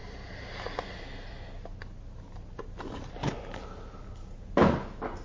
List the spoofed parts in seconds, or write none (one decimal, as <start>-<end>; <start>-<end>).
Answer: none